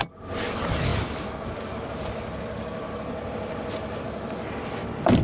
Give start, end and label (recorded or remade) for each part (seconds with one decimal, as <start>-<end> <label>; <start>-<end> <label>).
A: 0.0-5.2 recorded